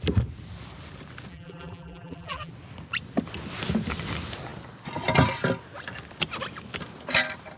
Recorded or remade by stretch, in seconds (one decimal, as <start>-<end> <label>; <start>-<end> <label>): 0.0-1.3 recorded; 1.3-2.5 remade; 2.5-7.6 recorded